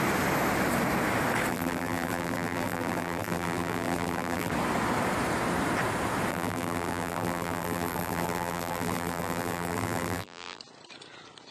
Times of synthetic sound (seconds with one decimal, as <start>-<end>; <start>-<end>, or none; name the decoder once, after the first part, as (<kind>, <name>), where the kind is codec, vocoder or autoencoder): 1.5-4.5 (vocoder, BigVGAN v2); 6.3-10.6